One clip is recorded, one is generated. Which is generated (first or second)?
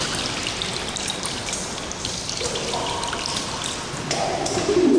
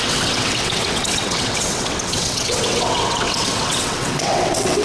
second